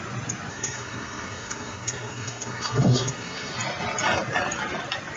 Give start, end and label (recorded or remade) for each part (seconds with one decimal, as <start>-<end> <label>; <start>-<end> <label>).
0.0-0.5 recorded; 0.5-3.5 remade; 3.5-5.2 recorded